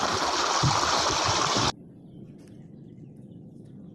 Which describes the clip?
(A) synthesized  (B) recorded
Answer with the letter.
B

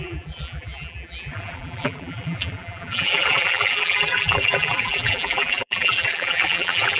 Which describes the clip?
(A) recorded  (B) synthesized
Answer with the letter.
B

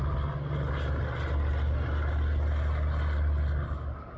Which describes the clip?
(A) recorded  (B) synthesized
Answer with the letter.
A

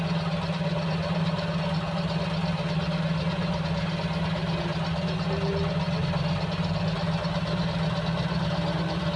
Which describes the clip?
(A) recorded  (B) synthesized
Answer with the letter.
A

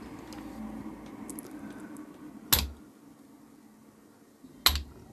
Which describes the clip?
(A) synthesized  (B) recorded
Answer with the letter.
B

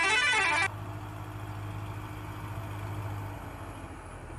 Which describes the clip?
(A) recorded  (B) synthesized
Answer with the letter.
A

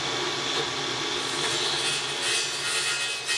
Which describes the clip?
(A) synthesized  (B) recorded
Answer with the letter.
B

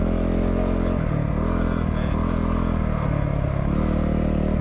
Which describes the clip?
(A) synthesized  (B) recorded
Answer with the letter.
B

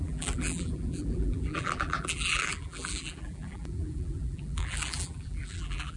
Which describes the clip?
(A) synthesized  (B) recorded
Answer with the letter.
A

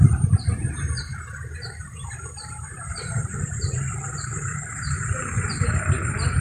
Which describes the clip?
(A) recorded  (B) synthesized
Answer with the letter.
B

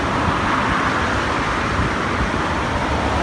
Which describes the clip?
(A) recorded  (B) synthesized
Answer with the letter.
A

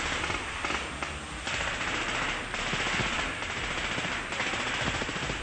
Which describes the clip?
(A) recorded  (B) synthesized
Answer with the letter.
A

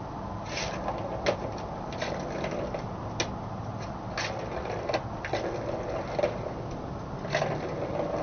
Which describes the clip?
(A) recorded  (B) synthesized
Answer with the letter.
A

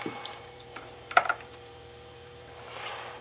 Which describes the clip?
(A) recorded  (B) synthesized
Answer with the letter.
B